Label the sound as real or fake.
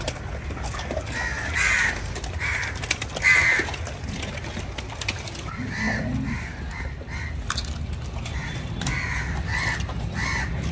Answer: real